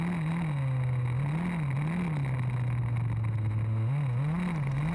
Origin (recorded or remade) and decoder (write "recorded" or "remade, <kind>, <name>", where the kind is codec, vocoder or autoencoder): recorded